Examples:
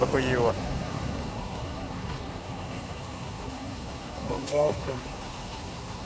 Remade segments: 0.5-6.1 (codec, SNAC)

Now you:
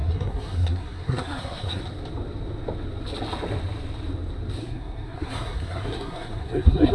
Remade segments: 0.0-1.8 (codec, SNAC); 4.6-6.9

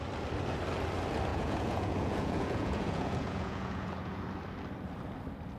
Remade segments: 1.3-4.2 (vocoder, Vocos)

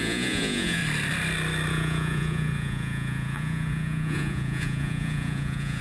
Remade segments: 0.0-0.8 (vocoder, Vocos); 1.7-5.8